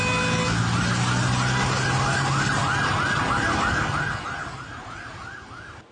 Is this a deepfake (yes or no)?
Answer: no